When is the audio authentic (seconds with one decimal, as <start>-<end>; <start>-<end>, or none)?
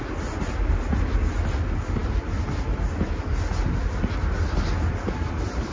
0.0-5.7